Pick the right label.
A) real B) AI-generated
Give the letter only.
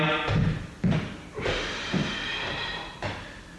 A